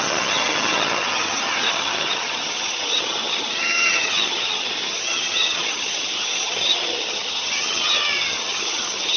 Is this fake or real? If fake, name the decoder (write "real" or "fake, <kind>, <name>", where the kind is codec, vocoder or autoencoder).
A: fake, vocoder, HiFi-GAN